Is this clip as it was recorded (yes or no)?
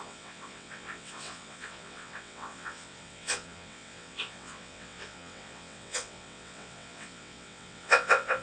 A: no